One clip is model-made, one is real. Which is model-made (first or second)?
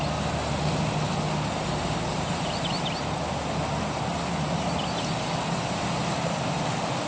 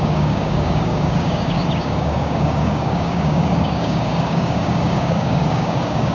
second